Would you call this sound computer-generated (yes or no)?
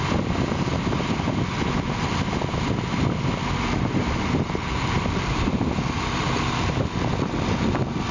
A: no